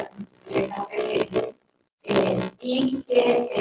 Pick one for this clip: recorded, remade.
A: recorded